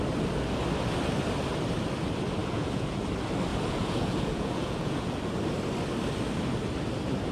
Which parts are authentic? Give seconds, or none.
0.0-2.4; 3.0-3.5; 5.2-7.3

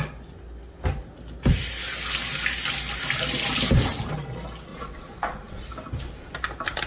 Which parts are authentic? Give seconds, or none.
0.0-4.7; 5.6-6.9

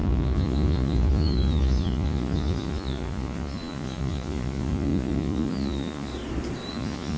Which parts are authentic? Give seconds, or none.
6.1-6.7

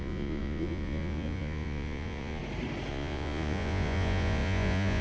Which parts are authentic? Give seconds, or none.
2.4-2.9

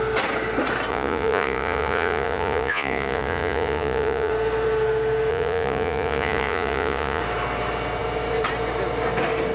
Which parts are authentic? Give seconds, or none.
0.0-0.9; 4.3-5.3; 7.2-9.5